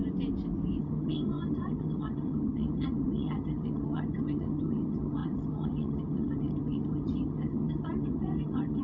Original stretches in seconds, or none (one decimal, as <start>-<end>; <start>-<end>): 0.0-0.8